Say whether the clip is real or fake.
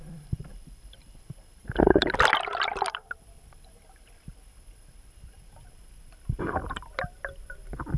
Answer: fake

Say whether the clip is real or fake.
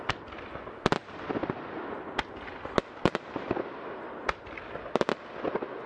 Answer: real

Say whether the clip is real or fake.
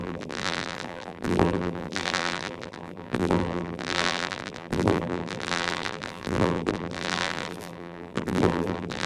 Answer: fake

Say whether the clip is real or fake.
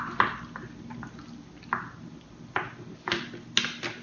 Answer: real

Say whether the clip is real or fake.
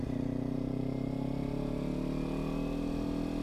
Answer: real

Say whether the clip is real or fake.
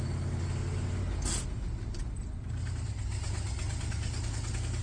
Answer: real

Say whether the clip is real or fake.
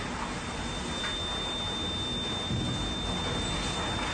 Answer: real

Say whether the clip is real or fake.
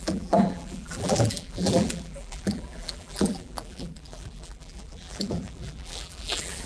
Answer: fake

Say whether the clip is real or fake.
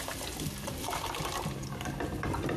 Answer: fake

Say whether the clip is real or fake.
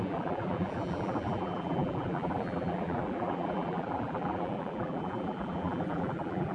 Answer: fake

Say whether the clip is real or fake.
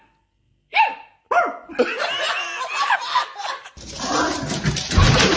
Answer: real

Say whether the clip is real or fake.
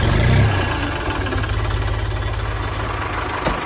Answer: real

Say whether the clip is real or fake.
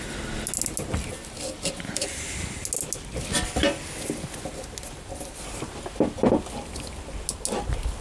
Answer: real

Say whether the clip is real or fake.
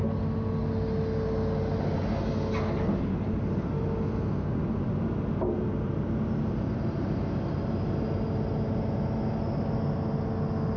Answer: real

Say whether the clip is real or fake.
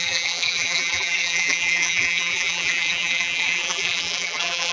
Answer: fake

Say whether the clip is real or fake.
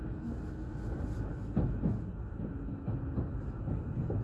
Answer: real